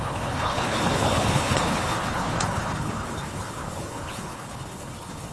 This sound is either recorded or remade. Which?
remade